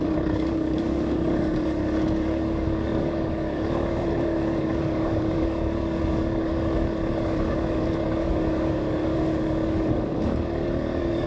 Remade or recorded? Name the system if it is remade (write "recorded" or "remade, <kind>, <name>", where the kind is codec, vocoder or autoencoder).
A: remade, codec, DAC